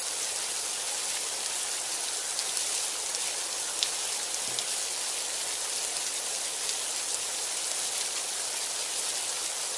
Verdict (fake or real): real